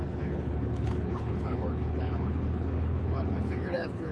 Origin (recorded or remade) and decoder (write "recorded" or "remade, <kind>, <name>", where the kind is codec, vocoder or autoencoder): remade, codec, HILCodec